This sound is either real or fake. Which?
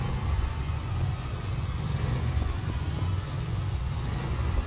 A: fake